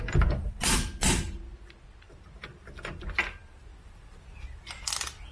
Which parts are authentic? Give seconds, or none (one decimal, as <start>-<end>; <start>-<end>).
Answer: 0.0-5.3